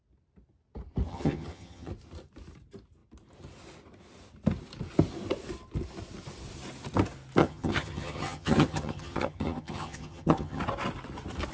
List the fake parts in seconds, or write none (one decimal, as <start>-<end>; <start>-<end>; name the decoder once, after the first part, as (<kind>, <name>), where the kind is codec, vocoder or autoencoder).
1.1-1.9 (vocoder, HiFi-GAN); 7.4-10.6

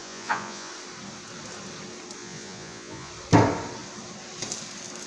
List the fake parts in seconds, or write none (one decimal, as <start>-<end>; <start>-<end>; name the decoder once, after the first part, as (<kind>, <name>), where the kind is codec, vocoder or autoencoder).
0.0-0.7 (vocoder, Vocos); 2.2-3.1

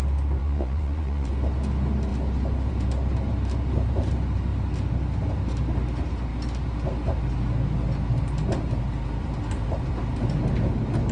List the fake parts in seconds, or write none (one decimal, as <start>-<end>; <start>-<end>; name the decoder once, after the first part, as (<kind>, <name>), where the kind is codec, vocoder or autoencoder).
0.4-1.3 (vocoder, Vocos)

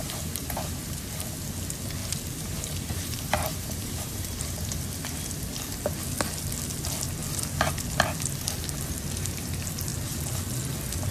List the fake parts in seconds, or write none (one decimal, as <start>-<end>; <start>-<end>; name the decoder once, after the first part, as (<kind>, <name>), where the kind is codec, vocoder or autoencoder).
0.0-1.1 (vocoder, BigVGAN v2); 2.0-4.7

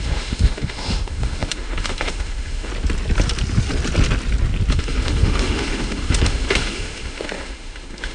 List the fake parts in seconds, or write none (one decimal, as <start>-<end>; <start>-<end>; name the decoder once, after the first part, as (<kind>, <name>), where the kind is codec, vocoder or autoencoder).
0.0-2.7 (autoencoder, DAC-VAE); 4.7-8.1

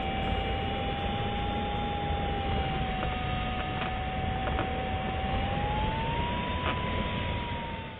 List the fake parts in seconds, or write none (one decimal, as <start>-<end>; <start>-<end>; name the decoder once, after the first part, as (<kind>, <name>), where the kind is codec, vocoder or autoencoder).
none

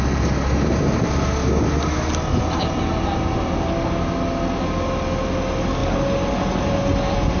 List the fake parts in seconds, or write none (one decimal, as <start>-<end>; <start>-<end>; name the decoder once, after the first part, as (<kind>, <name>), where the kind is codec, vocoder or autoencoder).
none

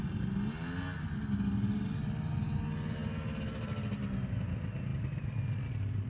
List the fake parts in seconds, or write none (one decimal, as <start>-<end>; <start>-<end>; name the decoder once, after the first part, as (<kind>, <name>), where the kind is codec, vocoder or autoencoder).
none